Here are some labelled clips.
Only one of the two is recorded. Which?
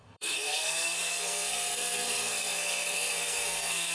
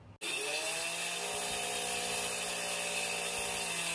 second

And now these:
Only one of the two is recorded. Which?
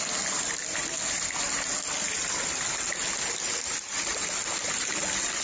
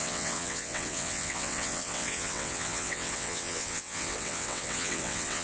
first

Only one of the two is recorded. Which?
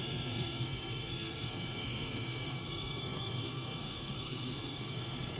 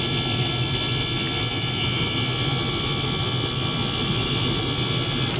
second